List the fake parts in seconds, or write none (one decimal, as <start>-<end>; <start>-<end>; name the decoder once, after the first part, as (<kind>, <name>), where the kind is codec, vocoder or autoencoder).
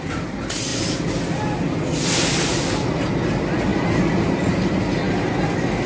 none